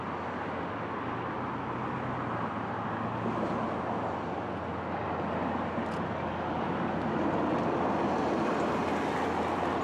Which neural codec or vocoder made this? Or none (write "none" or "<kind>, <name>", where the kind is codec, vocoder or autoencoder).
none